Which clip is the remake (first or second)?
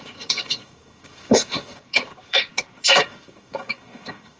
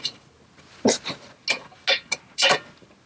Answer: first